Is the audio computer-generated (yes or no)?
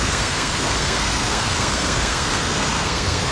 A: yes